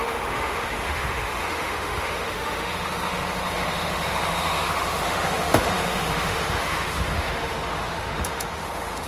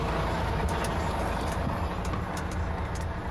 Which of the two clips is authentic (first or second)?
second